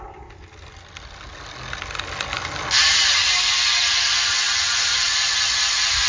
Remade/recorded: recorded